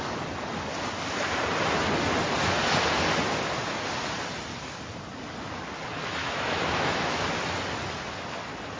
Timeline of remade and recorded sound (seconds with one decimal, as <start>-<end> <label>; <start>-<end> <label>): 0.0-6.2 recorded; 6.2-7.3 remade; 7.3-8.8 recorded